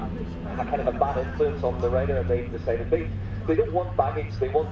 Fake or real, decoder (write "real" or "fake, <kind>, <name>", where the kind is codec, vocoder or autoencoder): real